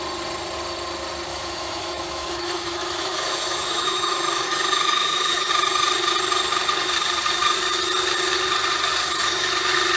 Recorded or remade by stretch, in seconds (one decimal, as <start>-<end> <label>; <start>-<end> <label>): 0.0-1.3 recorded; 1.3-5.5 remade; 5.5-10.0 recorded